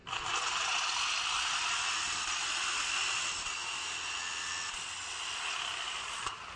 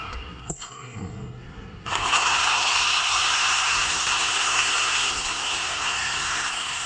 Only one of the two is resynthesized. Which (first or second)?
second